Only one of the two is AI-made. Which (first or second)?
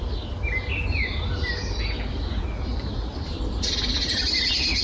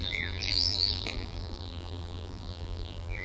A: second